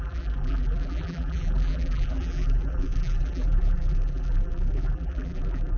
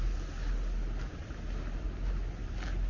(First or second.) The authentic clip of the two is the second